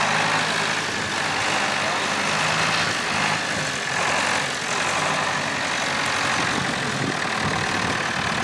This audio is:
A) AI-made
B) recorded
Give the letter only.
B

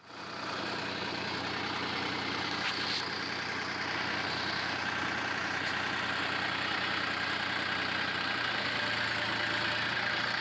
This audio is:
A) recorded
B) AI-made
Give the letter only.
A